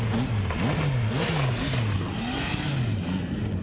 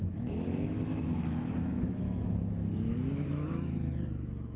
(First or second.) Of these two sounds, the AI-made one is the second